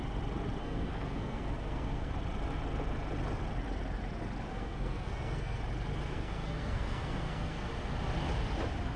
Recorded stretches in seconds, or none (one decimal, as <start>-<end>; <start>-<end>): 0.0-0.6; 2.1-4.5; 5.6-6.1; 7.7-9.0